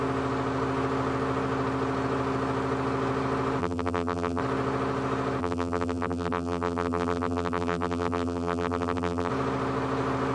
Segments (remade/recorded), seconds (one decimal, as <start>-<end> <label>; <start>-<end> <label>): 0.0-3.6 recorded; 3.6-4.4 remade; 4.4-5.4 recorded; 5.4-9.3 remade; 9.3-10.3 recorded